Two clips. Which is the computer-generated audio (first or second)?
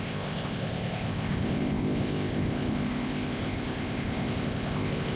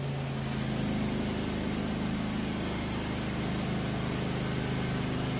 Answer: first